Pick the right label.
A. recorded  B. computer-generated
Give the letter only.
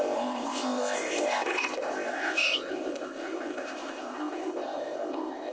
B